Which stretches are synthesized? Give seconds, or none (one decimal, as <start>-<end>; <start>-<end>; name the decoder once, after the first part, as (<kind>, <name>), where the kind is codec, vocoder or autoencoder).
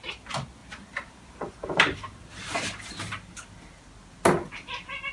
0.6-3.7 (vocoder, BigVGAN v2)